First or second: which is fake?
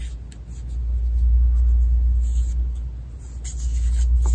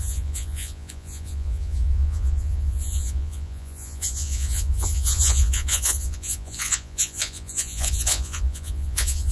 second